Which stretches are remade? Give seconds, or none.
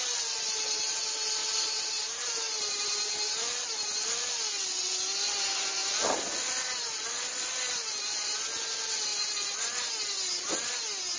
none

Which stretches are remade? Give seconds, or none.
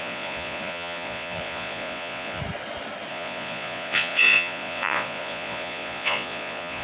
0.0-2.4 (vocoder, Vocos); 3.1-6.8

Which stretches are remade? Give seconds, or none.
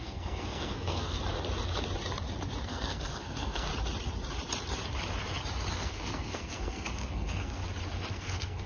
0.0-1.2 (codec, SNAC); 2.6-3.7; 5.7-7.6; 8.1-8.7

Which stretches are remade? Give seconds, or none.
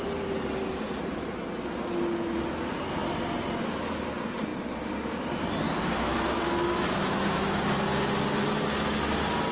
5.8-7.7 (autoencoder, DAC-VAE)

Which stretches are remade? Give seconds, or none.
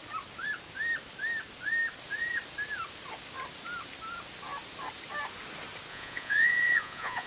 5.9-7.3 (vocoder, Vocos)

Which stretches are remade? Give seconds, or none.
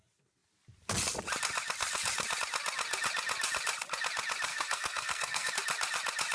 4.5-5.5 (codec, SNAC)